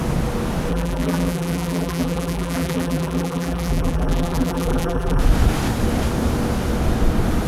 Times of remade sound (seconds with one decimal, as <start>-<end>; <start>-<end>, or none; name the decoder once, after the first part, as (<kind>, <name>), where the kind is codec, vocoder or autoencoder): 0.7-5.2 (vocoder, BigVGAN v2)